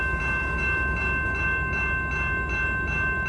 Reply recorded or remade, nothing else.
recorded